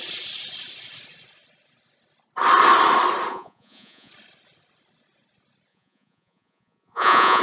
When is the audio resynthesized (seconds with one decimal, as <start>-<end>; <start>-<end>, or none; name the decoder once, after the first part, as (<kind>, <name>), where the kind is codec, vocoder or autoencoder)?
3.3-4.1 (vocoder, Vocos); 5.7-7.4